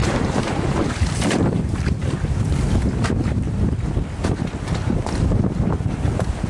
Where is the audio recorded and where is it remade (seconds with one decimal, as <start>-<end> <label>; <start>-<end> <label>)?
0.0-2.0 remade; 2.0-5.9 recorded; 5.9-6.5 remade

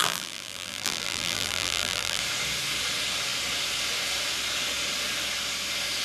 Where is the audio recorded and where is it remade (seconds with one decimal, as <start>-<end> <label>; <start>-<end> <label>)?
0.0-2.2 remade; 2.2-6.0 recorded